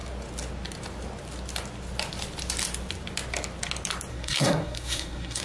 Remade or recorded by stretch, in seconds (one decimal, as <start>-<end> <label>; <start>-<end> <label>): 0.0-4.1 recorded; 4.1-5.4 remade